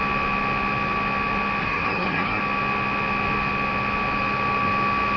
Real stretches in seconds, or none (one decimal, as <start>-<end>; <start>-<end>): 0.0-1.6; 2.4-5.2